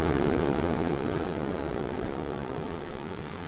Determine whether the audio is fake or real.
fake